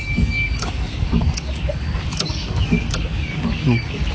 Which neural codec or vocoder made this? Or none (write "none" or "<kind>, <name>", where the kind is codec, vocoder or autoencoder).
codec, DAC